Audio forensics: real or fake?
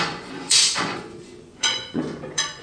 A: fake